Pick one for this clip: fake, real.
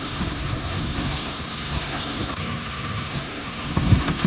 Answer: fake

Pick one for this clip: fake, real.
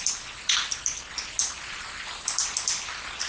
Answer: real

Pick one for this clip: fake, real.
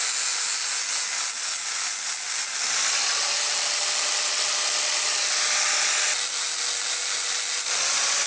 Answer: real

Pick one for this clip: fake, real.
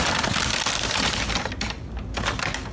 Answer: real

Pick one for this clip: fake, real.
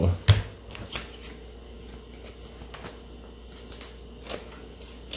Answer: real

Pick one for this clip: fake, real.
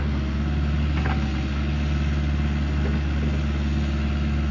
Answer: real